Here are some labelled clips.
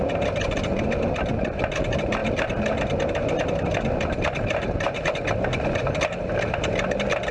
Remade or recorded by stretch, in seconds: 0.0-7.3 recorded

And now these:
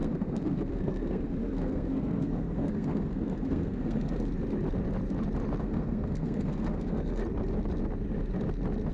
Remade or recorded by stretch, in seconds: 0.0-4.3 remade; 4.3-5.6 recorded; 5.6-7.2 remade; 7.2-8.9 recorded